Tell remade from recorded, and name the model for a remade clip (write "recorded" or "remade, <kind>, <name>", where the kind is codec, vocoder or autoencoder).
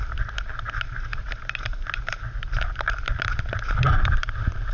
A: recorded